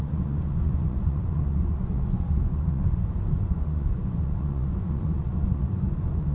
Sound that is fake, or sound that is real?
fake